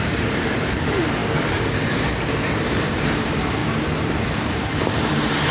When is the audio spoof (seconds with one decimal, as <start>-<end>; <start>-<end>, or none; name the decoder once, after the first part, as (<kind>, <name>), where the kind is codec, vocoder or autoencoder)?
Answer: 0.0-1.2 (vocoder, BigVGAN v2); 2.2-3.6; 4.3-5.5